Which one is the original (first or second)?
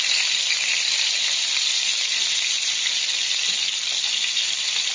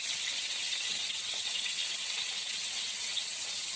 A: first